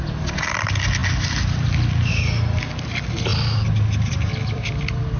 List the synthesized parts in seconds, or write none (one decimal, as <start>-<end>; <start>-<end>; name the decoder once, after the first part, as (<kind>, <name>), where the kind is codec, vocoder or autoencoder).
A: none